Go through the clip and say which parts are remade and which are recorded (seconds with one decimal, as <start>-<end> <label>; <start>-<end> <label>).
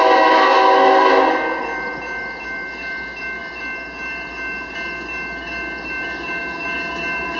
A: 0.0-7.4 recorded